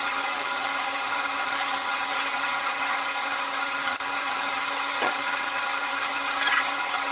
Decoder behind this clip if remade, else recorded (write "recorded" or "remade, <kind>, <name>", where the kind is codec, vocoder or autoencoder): remade, vocoder, HiFi-GAN